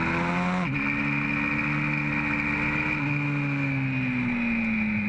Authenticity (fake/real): real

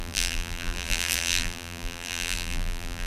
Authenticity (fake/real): fake